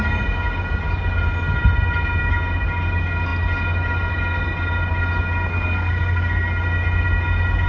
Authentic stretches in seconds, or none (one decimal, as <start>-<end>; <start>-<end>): 0.0-5.5; 6.5-7.7

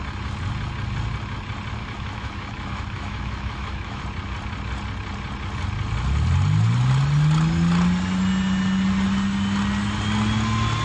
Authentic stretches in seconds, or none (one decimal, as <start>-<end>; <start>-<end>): 0.0-1.8; 4.0-10.8

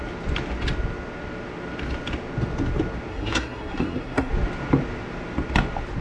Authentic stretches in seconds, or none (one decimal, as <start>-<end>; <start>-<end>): 0.0-3.1; 4.3-6.0

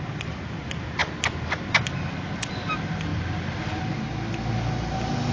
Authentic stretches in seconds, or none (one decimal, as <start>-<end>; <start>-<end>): 0.0-5.3

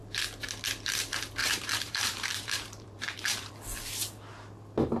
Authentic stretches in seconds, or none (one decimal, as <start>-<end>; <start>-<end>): 0.0-1.4; 3.5-5.0

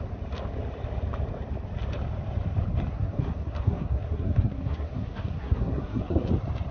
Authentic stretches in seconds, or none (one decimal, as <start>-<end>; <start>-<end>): 0.0-2.9; 6.3-6.7

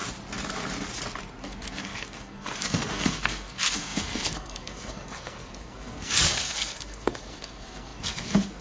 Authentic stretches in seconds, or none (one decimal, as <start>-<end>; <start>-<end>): 0.0-1.4

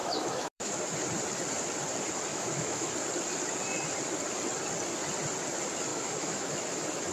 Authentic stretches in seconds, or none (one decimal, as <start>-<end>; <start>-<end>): 0.7-2.3; 2.9-5.9; 6.6-7.1